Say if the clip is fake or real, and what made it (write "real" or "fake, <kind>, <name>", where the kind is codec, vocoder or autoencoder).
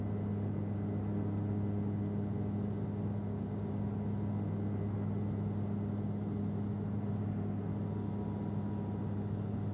real